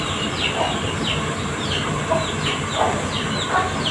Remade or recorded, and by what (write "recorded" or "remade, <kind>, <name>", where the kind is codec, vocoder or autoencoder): recorded